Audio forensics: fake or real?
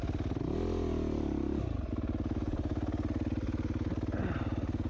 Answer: real